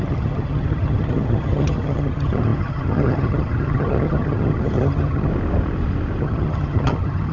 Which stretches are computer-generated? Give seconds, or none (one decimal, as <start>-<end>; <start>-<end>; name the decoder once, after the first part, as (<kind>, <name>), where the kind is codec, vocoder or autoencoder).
0.0-5.3 (vocoder, HiFi-GAN); 6.2-7.3